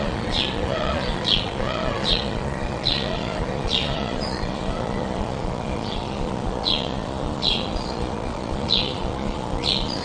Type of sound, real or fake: fake